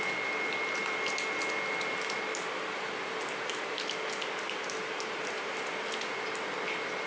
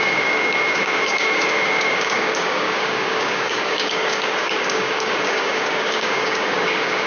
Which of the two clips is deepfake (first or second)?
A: second